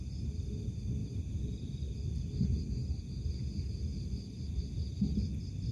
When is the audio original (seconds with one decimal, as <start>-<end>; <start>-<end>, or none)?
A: 0.0-1.0; 2.1-2.8; 3.3-3.9; 4.6-5.7